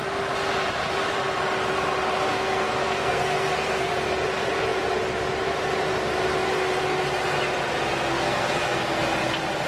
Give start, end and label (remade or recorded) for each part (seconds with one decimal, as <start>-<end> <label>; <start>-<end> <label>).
0.0-2.3 recorded; 2.3-3.9 remade; 3.9-8.1 recorded; 8.1-9.0 remade; 9.0-9.7 recorded